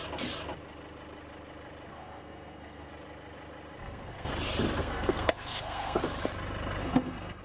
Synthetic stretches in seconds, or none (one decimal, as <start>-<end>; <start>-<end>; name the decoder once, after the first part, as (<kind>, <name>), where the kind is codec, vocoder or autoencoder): 1.9-2.9 (codec, SNAC); 3.8-4.3; 4.8-6.0; 6.8-7.4